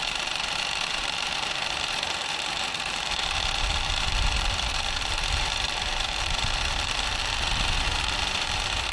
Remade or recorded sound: remade